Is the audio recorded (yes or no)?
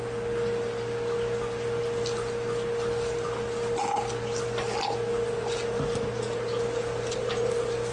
yes